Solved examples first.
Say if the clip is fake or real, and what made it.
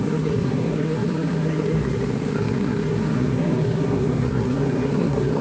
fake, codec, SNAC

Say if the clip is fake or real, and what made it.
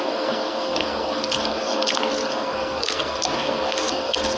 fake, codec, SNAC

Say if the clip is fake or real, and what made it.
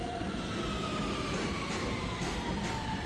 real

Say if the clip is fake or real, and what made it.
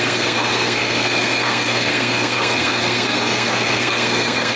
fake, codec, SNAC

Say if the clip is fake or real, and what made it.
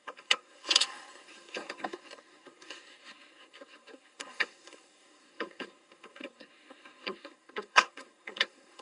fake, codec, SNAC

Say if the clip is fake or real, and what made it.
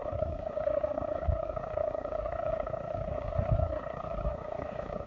fake, codec, SNAC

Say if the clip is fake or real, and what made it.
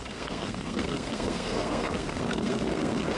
fake, codec, SNAC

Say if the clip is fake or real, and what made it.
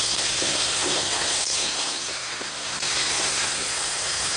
fake, codec, SNAC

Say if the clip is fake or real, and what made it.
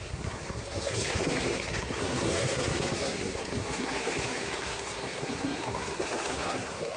fake, codec, SNAC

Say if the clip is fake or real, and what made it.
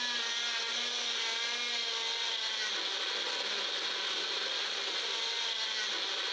real